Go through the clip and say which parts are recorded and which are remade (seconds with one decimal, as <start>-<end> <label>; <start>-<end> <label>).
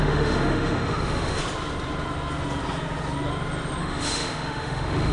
0.0-1.4 remade; 1.4-3.8 recorded; 3.8-5.1 remade